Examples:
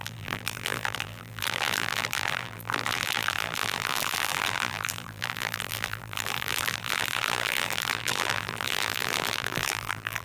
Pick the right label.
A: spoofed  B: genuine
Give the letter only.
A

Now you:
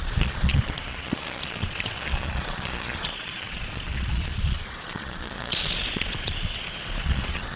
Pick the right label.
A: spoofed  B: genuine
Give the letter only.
A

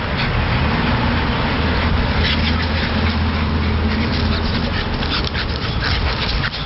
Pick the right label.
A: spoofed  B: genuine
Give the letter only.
B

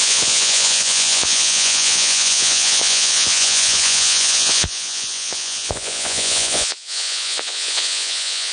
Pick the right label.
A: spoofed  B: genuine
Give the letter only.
A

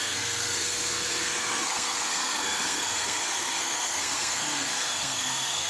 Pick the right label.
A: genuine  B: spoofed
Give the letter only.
B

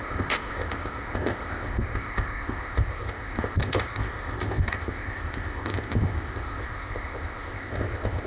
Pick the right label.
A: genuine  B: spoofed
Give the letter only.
B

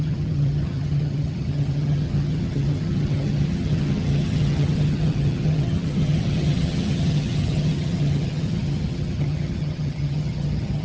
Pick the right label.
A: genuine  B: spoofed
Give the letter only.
B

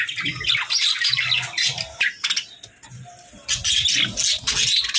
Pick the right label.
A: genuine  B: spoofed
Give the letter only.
A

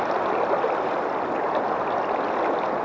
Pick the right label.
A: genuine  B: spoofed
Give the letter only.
A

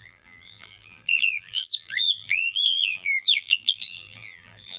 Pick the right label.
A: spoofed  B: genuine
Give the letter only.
A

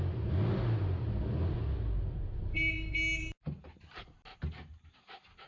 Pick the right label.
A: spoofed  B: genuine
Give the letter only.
B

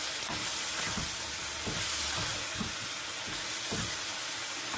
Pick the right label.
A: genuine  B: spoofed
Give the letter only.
A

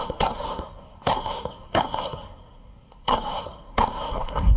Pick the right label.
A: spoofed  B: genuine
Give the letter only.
A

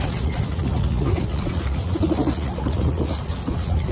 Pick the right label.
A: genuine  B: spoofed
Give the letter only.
B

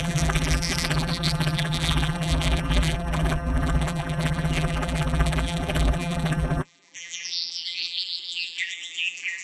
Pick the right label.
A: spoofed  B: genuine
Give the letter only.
A